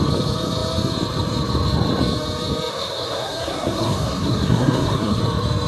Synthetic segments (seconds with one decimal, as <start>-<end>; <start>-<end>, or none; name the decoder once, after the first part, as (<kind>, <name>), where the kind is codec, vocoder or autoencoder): 2.7-5.2 (codec, SNAC)